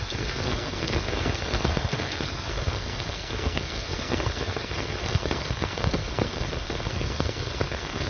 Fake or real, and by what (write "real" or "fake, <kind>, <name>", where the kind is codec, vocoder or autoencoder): fake, codec, SNAC